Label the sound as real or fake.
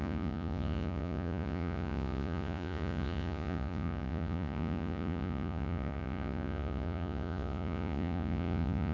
fake